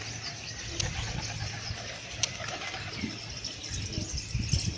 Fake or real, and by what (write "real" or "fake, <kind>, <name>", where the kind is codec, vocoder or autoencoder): real